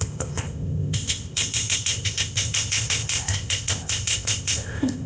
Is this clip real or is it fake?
fake